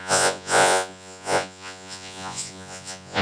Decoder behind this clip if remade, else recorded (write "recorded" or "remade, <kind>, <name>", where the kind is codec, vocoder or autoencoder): remade, vocoder, Vocos